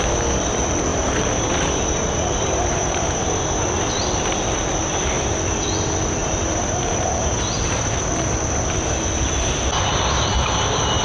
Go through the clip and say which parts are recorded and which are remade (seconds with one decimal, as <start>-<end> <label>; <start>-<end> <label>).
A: 0.0-0.9 recorded; 0.9-3.7 remade; 3.7-6.2 recorded; 6.2-7.3 remade; 7.3-11.0 recorded